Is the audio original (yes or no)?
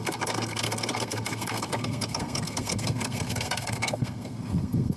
no